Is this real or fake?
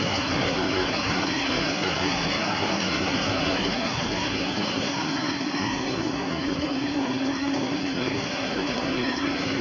fake